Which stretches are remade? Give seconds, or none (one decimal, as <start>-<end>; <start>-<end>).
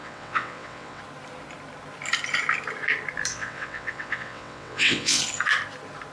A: 0.0-1.0; 3.3-5.2